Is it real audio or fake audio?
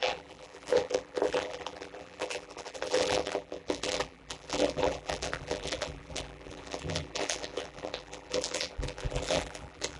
fake